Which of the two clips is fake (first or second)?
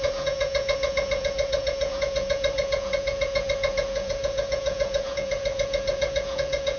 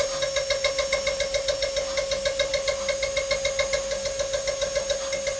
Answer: first